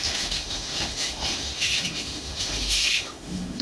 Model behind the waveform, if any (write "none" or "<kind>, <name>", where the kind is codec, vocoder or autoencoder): autoencoder, DAC-VAE